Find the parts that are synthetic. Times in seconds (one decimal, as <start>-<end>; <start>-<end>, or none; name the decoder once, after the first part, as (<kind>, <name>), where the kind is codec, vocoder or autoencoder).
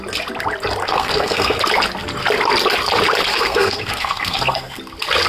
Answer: 0.8-1.6 (codec, SNAC); 3.3-4.8